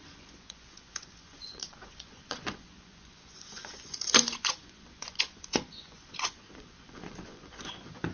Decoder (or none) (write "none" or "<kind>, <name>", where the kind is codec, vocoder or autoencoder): vocoder, Vocos